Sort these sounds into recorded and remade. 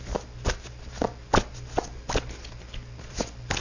recorded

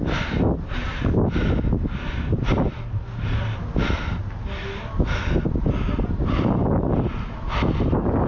recorded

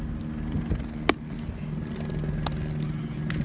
recorded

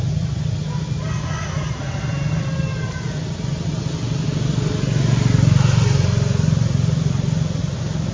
recorded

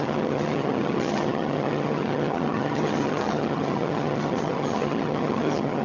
remade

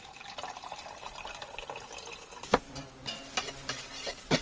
recorded